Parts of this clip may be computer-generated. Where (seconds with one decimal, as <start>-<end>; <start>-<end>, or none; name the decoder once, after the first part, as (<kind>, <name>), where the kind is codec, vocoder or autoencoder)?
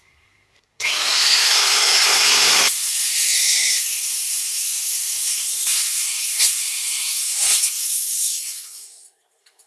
0.0-9.7 (codec, SNAC)